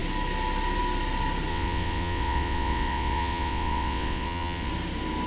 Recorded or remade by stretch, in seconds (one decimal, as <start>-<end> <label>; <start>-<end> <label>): 0.0-1.5 recorded; 1.5-4.7 remade; 4.7-5.3 recorded